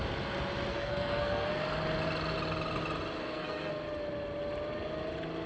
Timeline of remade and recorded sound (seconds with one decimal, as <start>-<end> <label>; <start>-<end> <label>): 0.0-0.7 recorded; 0.7-1.5 remade; 1.5-3.2 recorded; 3.2-3.7 remade; 3.7-5.5 recorded